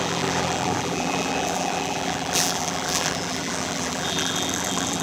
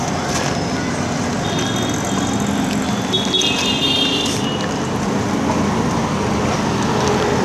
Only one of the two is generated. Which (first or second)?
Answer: first